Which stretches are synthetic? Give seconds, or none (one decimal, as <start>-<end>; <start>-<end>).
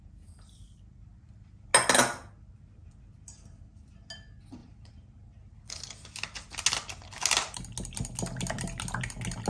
4.6-5.7